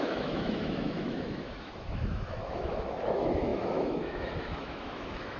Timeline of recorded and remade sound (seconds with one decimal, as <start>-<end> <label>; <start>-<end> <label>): 0.0-5.4 remade